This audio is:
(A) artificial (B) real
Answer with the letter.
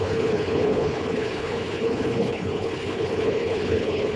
A